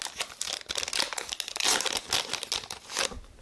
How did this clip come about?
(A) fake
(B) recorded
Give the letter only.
B